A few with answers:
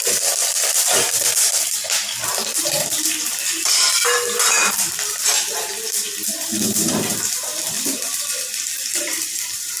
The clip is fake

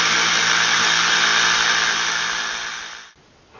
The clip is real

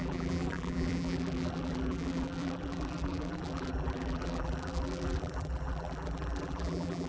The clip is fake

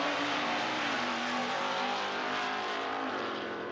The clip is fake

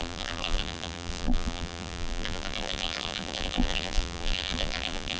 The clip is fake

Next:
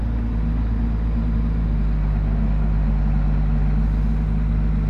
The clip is real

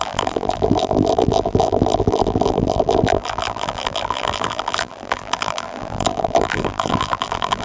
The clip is fake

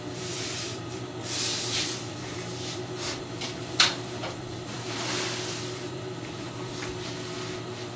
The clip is fake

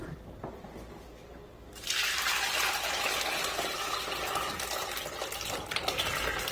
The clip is real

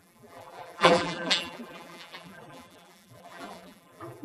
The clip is fake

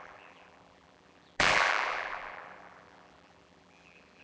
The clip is fake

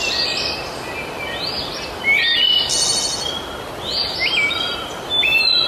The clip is real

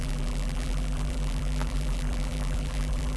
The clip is fake